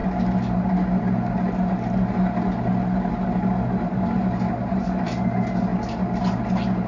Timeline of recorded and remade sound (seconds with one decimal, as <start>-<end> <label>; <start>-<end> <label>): 0.0-6.9 recorded